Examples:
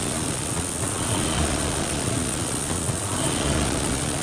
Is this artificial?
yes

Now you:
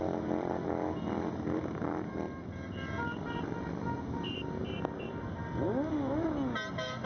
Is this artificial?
no